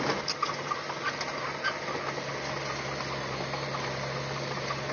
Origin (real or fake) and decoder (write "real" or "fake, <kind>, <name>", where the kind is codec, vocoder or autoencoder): real